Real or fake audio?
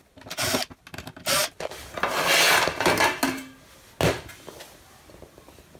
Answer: real